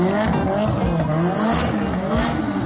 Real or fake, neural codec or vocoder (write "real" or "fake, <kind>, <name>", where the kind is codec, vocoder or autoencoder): real